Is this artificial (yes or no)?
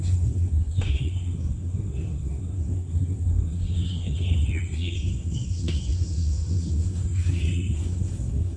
yes